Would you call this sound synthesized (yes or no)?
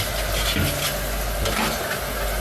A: no